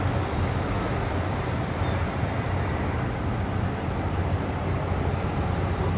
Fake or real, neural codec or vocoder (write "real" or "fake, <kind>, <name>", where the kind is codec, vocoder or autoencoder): real